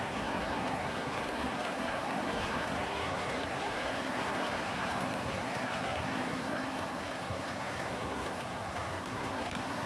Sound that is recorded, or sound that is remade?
remade